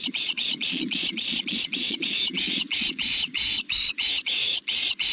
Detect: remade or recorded remade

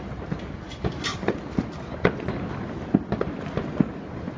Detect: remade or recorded recorded